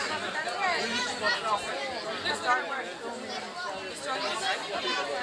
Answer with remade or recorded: recorded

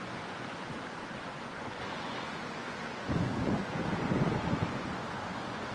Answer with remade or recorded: remade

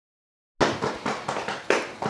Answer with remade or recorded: recorded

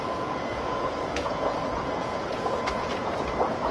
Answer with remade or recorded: remade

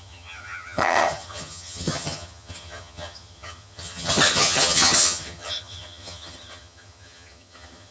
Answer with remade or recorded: remade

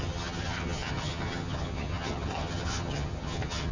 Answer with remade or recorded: remade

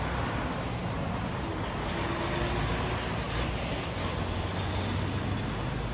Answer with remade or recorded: recorded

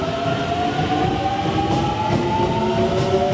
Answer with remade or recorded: recorded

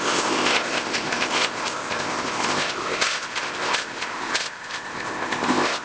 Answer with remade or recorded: remade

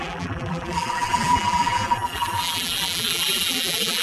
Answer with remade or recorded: remade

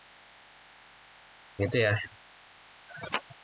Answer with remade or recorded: recorded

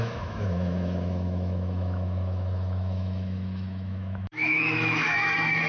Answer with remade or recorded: remade